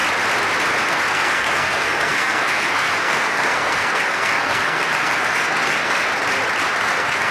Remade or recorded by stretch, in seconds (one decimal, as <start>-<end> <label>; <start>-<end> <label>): 0.0-0.9 recorded; 0.9-6.1 remade; 6.1-6.8 recorded; 6.8-7.3 remade